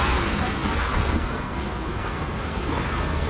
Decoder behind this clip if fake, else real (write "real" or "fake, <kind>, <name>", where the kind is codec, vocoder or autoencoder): fake, codec, SNAC